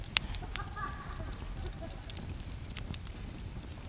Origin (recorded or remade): remade